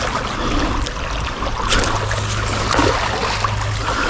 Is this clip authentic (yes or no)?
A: yes